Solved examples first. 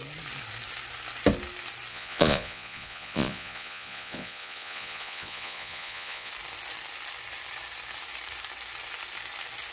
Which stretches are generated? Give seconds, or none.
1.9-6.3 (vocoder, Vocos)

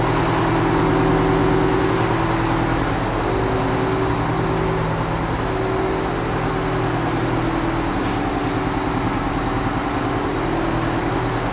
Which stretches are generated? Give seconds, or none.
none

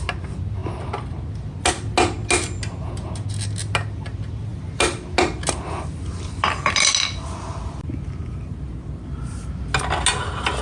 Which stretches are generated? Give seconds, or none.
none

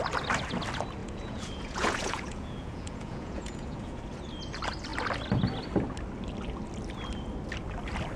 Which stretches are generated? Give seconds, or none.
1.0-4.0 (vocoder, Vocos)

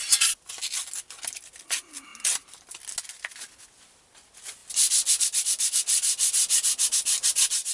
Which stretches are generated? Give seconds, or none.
none